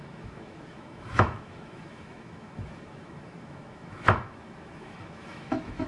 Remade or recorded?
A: remade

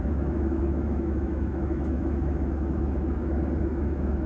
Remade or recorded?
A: remade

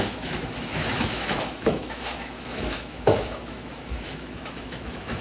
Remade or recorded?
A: remade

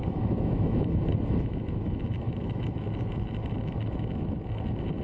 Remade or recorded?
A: remade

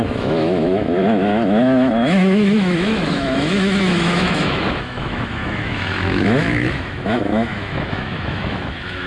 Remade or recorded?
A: remade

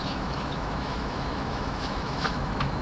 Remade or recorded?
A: remade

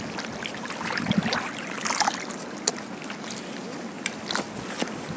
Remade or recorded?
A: recorded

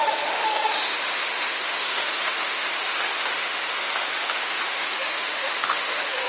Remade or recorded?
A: remade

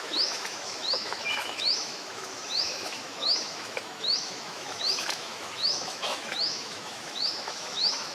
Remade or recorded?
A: remade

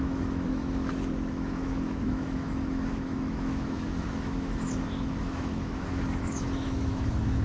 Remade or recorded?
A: remade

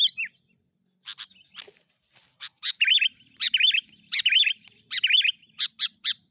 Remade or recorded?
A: recorded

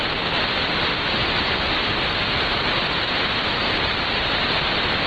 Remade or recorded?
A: recorded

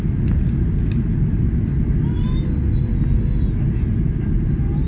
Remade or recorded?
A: recorded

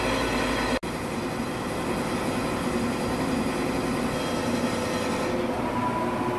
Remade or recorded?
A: recorded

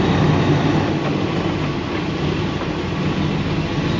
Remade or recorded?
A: recorded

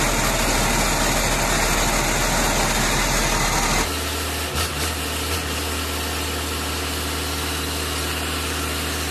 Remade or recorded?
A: recorded